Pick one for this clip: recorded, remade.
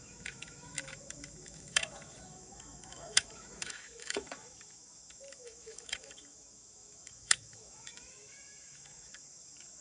remade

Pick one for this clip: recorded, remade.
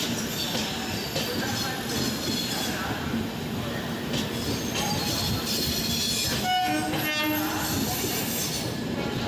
recorded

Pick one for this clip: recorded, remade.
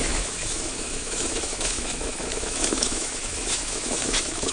remade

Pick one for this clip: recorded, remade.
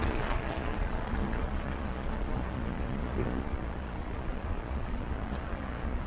remade